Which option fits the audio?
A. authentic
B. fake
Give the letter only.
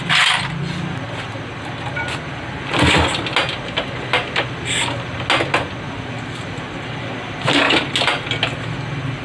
A